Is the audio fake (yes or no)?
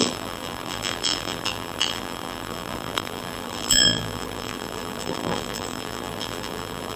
yes